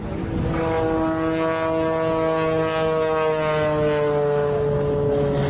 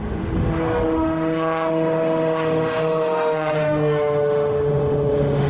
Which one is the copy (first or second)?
second